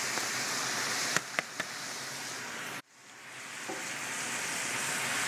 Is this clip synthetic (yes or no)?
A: no